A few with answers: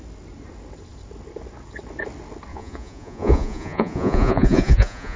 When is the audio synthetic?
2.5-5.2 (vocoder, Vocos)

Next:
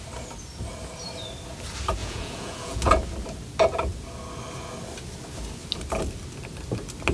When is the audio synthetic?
2.0-2.9 (vocoder, Vocos)

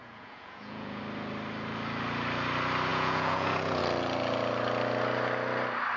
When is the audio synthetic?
0.0-1.0 (vocoder, Vocos); 2.9-3.8

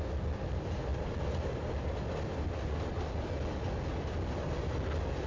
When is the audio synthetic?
none

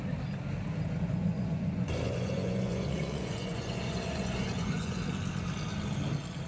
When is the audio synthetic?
1.1-5.0 (vocoder, Vocos)